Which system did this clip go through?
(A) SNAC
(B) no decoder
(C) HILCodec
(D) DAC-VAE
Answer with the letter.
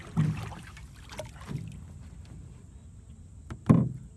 B